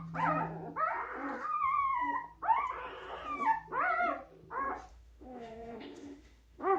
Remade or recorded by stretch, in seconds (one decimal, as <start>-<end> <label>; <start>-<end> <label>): 0.0-4.9 recorded; 4.9-6.8 remade